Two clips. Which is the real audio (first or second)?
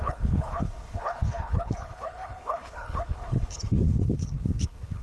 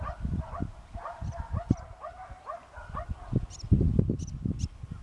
second